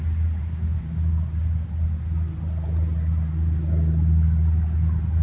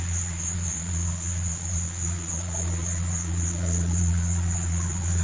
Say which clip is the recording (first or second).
first